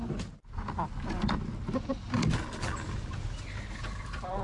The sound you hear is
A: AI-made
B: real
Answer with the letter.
B